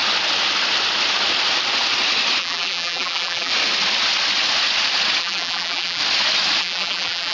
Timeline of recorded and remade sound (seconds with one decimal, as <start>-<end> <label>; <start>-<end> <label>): 0.0-2.4 recorded; 2.4-3.5 remade; 3.5-5.2 recorded; 5.2-6.0 remade; 6.0-6.6 recorded; 6.6-7.3 remade